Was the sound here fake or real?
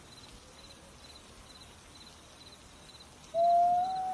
real